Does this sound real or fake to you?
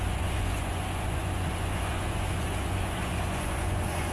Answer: fake